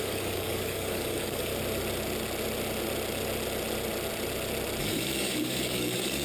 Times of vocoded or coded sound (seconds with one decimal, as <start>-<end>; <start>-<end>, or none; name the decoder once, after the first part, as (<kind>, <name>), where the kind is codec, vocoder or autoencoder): 0.0-1.5 (codec, DAC); 4.8-6.2